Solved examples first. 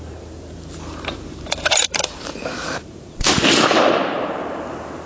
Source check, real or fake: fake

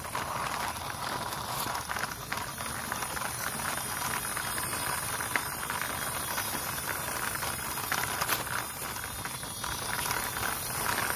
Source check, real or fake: real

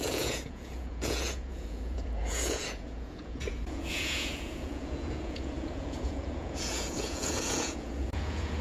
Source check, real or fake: fake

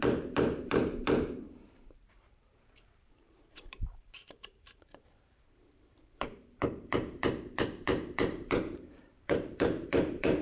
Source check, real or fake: fake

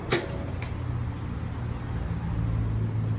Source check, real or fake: real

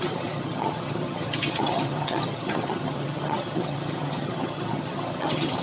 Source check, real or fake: fake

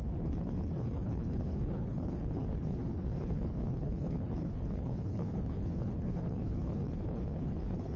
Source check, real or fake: fake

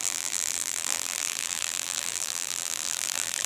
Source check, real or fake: fake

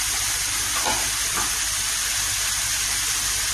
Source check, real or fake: real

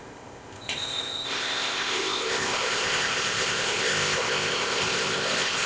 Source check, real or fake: fake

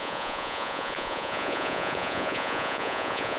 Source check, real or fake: fake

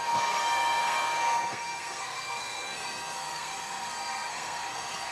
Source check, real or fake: fake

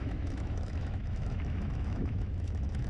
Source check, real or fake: fake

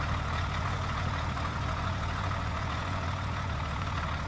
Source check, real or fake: fake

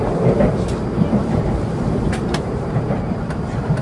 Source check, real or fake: fake